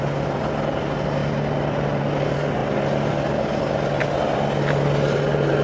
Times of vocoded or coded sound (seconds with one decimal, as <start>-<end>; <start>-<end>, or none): none